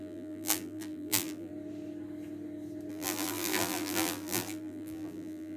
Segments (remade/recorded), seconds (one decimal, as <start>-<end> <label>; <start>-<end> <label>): 0.0-1.5 remade; 1.5-2.9 recorded; 2.9-5.6 remade